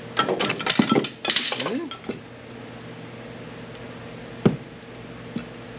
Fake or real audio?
real